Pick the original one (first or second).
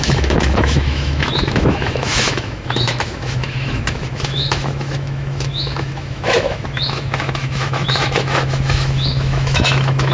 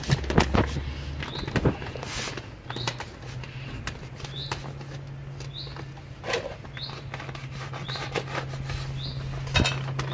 second